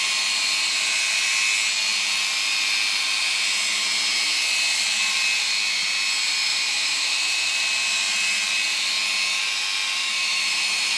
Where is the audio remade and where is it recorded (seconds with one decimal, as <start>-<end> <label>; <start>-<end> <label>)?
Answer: 0.0-6.4 recorded; 6.4-7.5 remade; 7.5-10.0 recorded; 10.0-11.0 remade